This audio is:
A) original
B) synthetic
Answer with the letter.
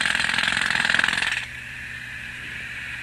B